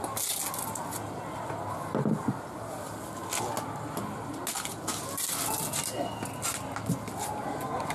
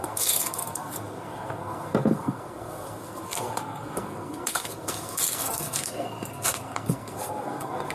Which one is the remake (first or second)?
second